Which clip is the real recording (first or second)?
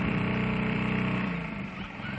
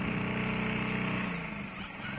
second